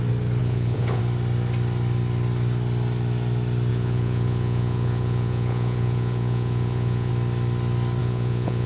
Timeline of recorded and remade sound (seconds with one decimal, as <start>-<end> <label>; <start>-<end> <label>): 0.0-0.4 recorded; 0.4-1.0 remade; 1.0-3.7 recorded; 3.7-7.1 remade; 7.1-8.0 recorded; 8.0-8.7 remade